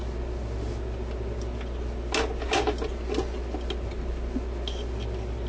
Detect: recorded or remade recorded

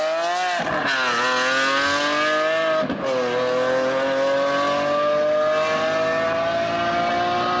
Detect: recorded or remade recorded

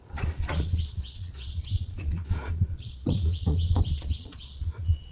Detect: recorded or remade remade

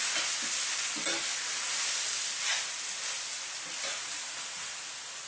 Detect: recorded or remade recorded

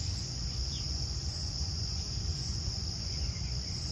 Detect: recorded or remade remade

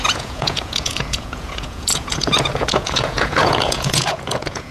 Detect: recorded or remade remade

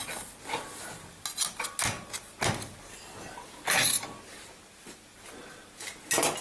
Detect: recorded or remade recorded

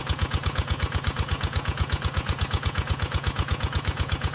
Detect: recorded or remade remade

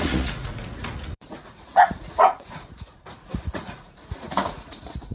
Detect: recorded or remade remade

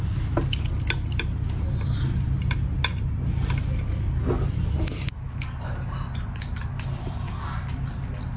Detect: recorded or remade recorded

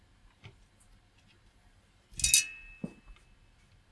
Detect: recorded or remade recorded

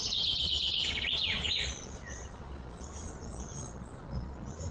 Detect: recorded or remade remade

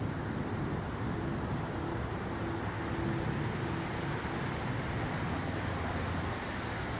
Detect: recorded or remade recorded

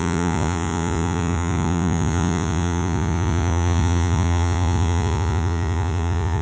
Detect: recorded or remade remade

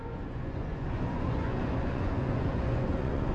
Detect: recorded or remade remade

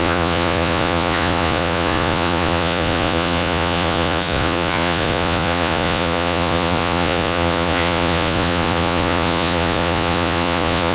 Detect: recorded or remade remade